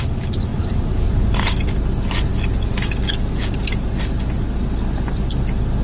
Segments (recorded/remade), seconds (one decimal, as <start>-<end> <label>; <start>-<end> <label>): 0.0-0.5 recorded; 0.5-1.3 remade; 1.3-5.8 recorded